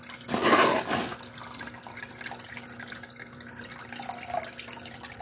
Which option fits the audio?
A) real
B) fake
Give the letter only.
A